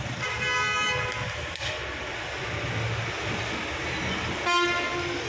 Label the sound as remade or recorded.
recorded